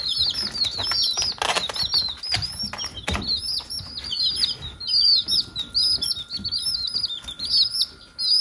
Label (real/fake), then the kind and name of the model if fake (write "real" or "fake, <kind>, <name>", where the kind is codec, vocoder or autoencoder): real